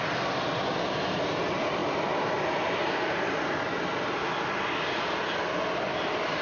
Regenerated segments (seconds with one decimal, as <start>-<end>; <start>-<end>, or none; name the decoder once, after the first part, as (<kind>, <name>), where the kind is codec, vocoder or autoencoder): none